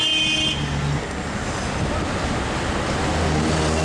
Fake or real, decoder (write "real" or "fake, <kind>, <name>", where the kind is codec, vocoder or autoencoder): real